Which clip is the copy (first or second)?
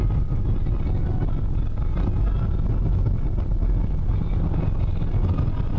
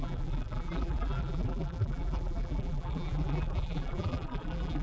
second